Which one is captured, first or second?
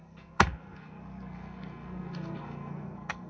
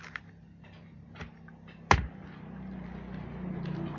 second